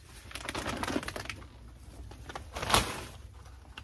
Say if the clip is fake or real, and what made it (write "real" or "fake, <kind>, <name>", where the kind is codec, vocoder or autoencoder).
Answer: real